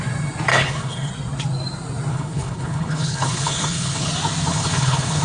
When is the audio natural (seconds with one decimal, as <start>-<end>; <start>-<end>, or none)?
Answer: 0.0-0.5; 1.1-2.1; 4.1-4.5